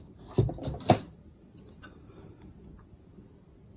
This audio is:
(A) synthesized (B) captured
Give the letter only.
B